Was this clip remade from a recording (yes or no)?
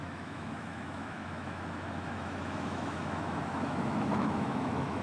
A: yes